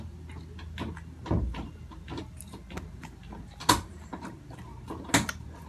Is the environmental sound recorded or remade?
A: recorded